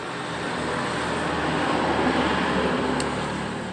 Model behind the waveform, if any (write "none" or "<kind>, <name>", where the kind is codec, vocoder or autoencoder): none